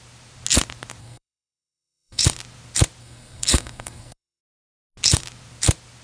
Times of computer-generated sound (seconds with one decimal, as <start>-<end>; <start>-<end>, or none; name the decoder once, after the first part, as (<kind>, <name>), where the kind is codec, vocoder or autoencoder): 1.0-2.2 (codec, SNAC); 3.0-4.4